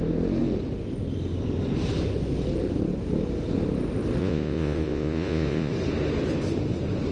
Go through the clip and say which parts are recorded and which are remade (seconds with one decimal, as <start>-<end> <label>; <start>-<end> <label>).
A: 0.0-4.2 recorded; 4.2-5.7 remade; 5.7-7.1 recorded

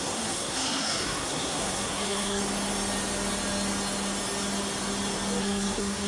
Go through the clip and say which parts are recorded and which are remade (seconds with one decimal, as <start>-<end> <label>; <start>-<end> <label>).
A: 0.0-2.4 remade; 2.4-5.4 recorded; 5.4-6.1 remade